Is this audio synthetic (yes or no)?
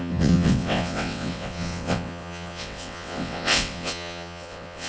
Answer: yes